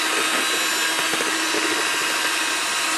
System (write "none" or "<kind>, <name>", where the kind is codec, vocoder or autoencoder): none